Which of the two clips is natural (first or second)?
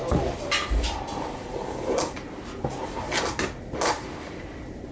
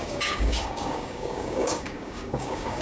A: first